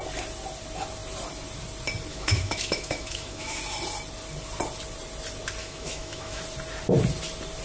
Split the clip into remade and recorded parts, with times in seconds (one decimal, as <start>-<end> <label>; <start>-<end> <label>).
0.0-2.1 recorded; 2.1-3.6 remade; 3.6-5.6 recorded; 5.6-6.4 remade; 6.4-7.6 recorded